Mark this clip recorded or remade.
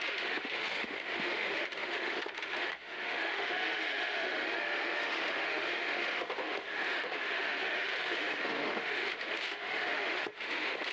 remade